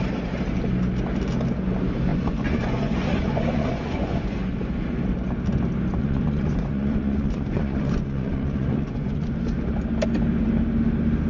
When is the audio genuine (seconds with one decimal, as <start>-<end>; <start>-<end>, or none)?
0.0-2.1; 4.5-6.0; 9.3-11.3